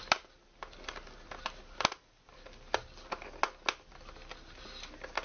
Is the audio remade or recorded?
recorded